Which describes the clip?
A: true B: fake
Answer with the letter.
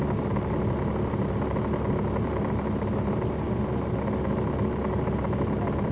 A